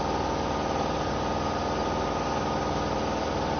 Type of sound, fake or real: real